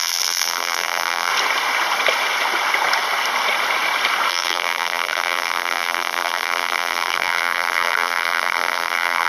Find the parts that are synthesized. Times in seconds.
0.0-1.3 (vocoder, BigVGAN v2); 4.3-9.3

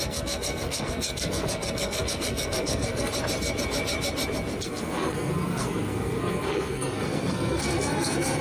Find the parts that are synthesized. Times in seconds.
0.0-3.1 (codec, SNAC); 4.6-8.4

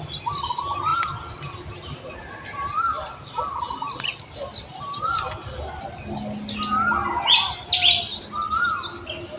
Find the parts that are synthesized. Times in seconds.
none

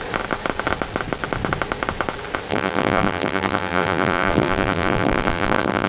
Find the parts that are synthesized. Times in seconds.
2.5-5.9 (vocoder, BigVGAN v2)